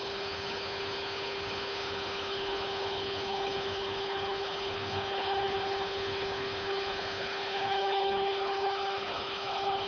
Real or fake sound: fake